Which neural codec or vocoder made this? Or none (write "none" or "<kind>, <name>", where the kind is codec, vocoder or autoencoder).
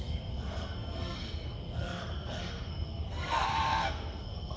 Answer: codec, SNAC